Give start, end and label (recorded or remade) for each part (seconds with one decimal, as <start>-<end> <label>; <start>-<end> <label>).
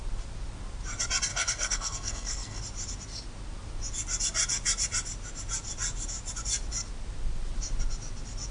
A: 0.0-1.3 recorded; 1.3-2.6 remade; 2.6-8.5 recorded